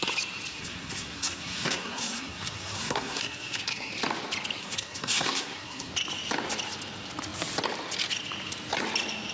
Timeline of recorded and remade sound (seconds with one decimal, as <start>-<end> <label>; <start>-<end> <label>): 0.0-0.5 recorded; 0.5-3.9 remade; 3.9-4.6 recorded; 4.6-5.9 remade; 5.9-9.3 recorded

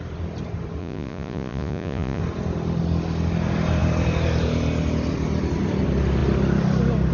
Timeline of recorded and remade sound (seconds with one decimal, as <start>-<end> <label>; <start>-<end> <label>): 0.0-0.8 recorded; 0.8-2.2 remade; 2.2-7.1 recorded

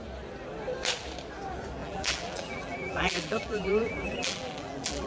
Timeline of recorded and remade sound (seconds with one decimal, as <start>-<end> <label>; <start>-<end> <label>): 0.0-1.8 recorded; 1.8-5.1 remade